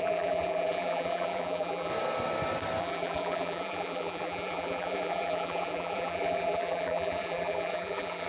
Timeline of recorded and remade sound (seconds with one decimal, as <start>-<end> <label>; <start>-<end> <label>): 0.0-1.9 remade; 1.9-2.8 recorded; 2.8-8.3 remade